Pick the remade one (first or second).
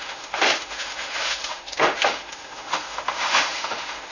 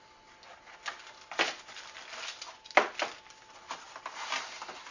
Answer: first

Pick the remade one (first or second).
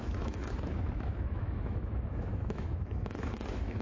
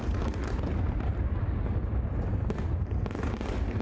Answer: first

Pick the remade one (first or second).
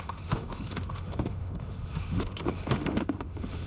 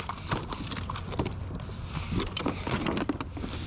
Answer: first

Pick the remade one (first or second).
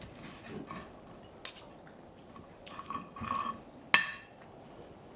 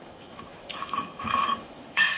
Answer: second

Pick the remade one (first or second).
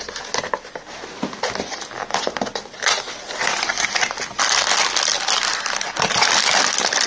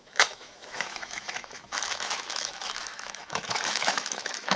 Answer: second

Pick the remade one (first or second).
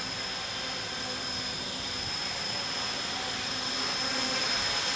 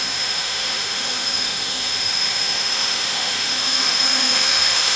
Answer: second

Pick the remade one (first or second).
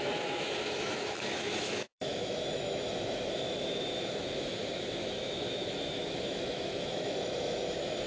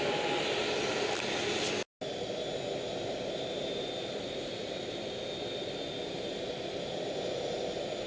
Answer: first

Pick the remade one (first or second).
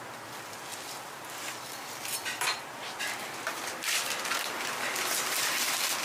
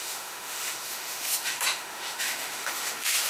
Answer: second